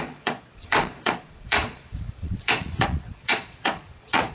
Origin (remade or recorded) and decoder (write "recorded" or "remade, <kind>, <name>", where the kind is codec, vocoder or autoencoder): remade, vocoder, Vocos